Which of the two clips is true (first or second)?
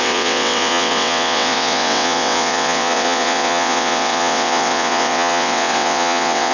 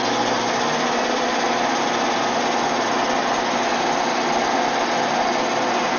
second